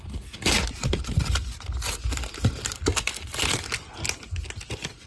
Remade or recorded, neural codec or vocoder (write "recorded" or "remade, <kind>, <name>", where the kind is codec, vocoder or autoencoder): recorded